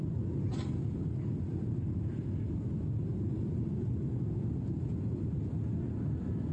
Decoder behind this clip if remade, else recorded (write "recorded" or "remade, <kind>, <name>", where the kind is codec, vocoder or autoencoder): recorded